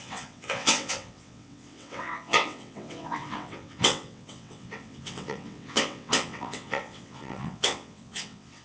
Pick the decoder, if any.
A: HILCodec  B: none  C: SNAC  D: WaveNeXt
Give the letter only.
D